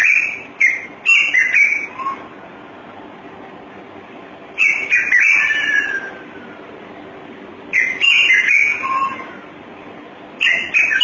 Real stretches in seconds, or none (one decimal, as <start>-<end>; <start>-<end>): 1.2-11.0